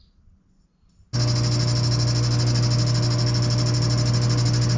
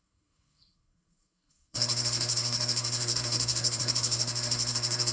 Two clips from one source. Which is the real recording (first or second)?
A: first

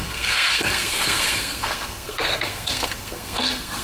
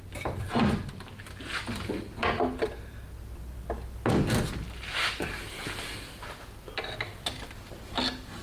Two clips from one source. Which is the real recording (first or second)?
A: second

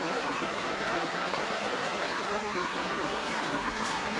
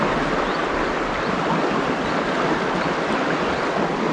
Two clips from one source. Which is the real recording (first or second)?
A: second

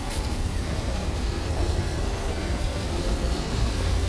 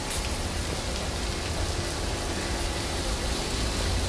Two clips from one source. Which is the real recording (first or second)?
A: second